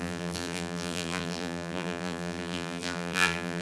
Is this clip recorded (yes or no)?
no